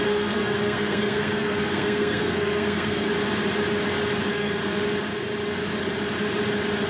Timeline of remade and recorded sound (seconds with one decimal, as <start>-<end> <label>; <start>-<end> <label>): 0.0-3.1 remade; 3.1-4.3 recorded; 4.3-4.8 remade; 4.8-6.9 recorded